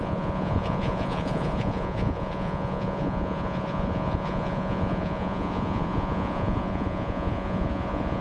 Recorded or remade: remade